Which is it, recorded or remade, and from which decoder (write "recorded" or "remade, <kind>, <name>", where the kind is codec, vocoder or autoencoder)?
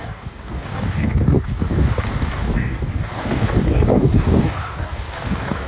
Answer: remade, codec, DAC